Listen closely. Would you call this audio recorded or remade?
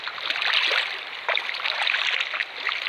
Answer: recorded